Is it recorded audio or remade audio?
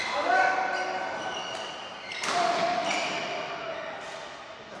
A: recorded